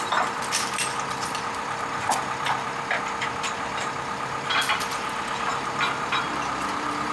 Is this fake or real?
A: fake